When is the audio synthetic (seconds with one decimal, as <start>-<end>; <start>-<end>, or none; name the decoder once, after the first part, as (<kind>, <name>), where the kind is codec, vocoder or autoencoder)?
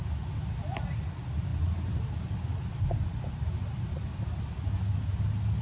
none